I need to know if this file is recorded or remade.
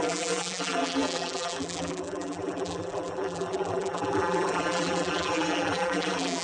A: remade